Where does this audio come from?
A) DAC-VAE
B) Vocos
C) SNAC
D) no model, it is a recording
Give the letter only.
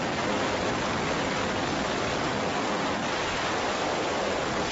D